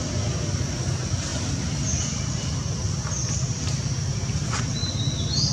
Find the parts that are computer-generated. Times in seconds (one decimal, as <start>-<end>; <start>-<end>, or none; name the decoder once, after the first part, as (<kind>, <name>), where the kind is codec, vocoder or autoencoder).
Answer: none